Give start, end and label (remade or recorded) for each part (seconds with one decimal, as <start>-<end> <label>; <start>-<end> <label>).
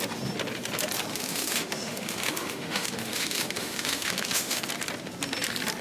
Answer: 0.0-1.1 recorded; 1.1-4.6 remade; 4.6-5.8 recorded